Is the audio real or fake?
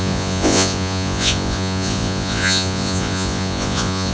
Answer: fake